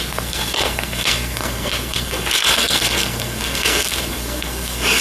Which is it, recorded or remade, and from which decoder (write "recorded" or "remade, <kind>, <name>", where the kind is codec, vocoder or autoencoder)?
remade, codec, SNAC